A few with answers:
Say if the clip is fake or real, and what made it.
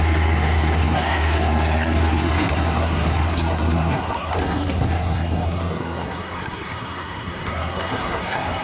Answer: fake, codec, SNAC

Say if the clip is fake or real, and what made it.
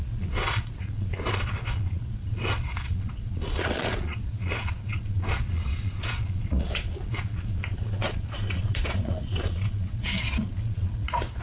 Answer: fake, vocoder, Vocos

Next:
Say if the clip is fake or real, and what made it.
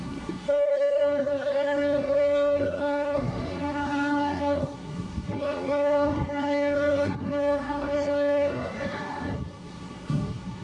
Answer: fake, codec, SNAC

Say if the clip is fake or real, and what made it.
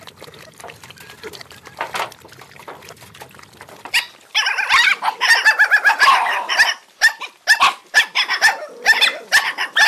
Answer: real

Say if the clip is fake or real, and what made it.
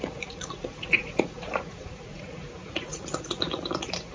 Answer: fake, vocoder, Vocos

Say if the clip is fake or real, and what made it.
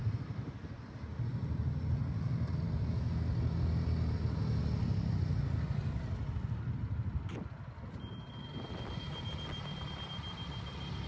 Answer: real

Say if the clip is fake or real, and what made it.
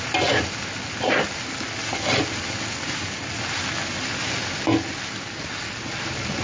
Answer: real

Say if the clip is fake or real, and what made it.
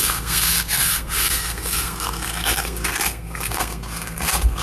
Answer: fake, codec, SNAC